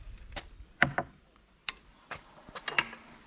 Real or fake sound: real